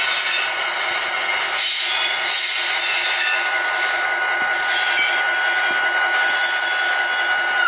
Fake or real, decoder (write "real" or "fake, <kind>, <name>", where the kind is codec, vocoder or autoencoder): real